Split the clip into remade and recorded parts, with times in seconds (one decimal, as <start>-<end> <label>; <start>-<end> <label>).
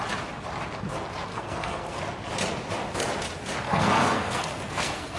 0.0-1.3 recorded; 1.3-2.0 remade; 2.0-3.6 recorded; 3.6-5.2 remade